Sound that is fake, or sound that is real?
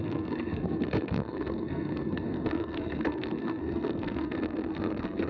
fake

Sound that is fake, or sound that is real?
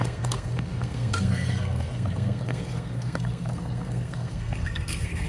fake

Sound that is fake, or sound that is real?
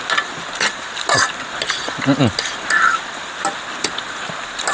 real